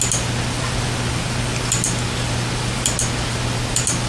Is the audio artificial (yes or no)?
no